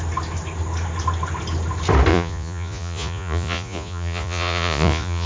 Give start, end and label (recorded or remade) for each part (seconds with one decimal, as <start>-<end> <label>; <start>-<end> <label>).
0.0-2.1 recorded; 2.1-5.3 remade

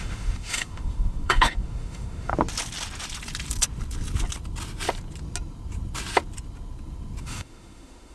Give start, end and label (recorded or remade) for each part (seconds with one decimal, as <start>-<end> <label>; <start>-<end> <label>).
0.0-2.3 remade; 2.3-7.2 recorded; 7.2-8.1 remade

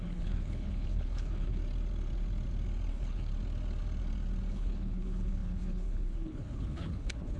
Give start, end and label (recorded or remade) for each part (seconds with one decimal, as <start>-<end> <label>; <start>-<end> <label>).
0.0-1.6 remade; 1.6-2.9 recorded; 2.9-3.3 remade; 3.3-4.5 recorded; 4.5-7.4 remade

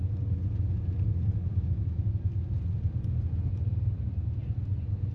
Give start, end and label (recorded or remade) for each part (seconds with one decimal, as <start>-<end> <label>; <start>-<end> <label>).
0.0-1.5 recorded; 1.5-2.0 remade; 2.0-5.1 recorded

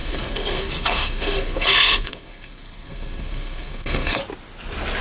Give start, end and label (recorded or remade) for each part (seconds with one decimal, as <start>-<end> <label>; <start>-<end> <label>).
0.0-4.2 remade; 4.2-5.0 recorded